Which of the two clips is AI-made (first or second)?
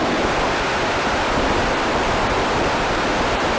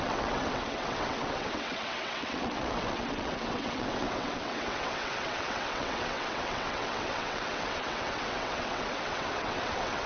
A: second